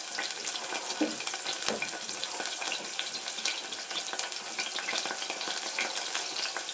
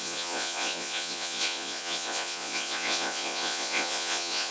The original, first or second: first